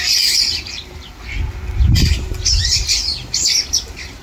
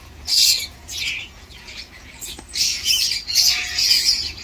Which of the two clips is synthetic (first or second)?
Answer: second